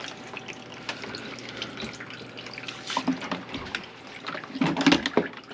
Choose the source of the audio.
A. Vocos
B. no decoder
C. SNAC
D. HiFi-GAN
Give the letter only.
B